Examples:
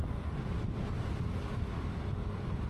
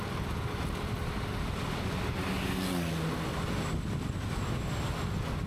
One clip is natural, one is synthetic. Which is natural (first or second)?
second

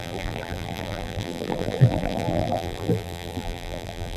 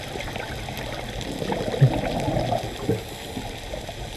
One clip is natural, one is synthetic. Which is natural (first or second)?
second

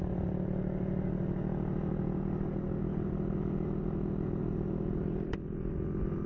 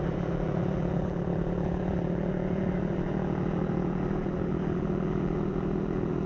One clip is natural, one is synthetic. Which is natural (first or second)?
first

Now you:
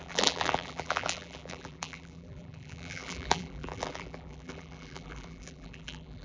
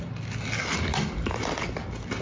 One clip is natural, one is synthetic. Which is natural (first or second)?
second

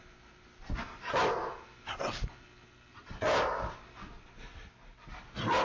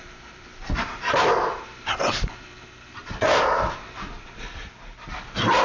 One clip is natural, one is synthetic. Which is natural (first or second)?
first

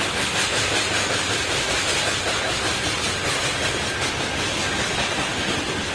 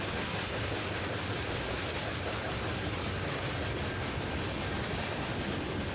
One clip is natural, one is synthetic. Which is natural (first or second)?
first